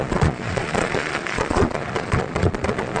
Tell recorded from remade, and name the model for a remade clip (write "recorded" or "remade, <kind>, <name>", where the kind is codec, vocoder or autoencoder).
remade, vocoder, Vocos